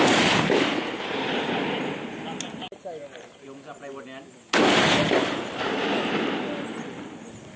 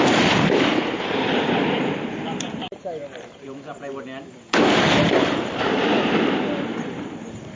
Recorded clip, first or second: first